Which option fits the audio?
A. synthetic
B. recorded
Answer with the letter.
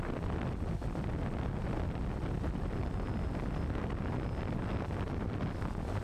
B